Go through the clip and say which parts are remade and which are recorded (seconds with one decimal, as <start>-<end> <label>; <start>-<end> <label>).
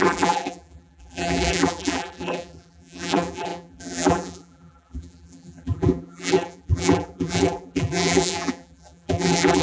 0.0-9.6 remade